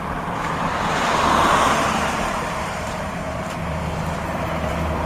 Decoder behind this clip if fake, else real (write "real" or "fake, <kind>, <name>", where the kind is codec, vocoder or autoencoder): fake, vocoder, BigVGAN v2